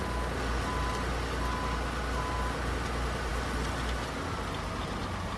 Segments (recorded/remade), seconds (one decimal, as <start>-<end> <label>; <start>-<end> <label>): 0.0-5.4 recorded

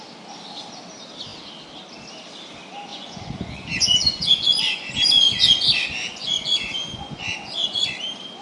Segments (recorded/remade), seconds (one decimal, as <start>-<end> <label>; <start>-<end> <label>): 0.0-2.9 recorded; 2.9-7.9 remade; 7.9-8.4 recorded

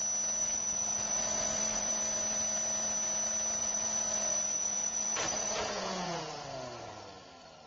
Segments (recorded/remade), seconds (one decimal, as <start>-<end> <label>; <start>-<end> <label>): 0.0-0.4 recorded; 0.4-1.9 remade; 1.9-3.6 recorded; 3.6-6.2 remade; 6.2-7.7 recorded

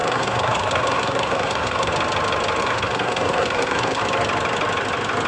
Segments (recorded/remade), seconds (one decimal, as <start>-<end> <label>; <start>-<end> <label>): 0.0-1.9 remade; 1.9-2.6 recorded; 2.6-4.0 remade; 4.0-5.3 recorded

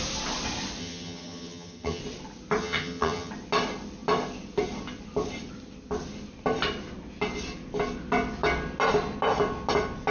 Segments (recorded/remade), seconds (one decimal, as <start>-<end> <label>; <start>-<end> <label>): 0.0-0.8 recorded; 0.8-2.0 remade; 2.0-2.6 recorded; 2.6-3.3 remade; 3.3-10.1 recorded

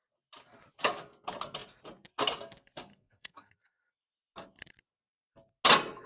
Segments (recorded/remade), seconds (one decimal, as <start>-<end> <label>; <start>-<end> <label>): 0.0-2.9 recorded; 2.9-3.5 remade; 3.5-6.1 recorded

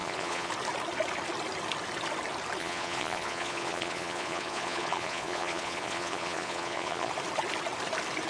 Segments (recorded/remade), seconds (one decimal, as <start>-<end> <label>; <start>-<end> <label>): 0.0-0.5 remade; 0.5-2.6 recorded; 2.6-7.1 remade; 7.1-8.3 recorded